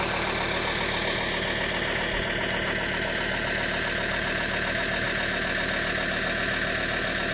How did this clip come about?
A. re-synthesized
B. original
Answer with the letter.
B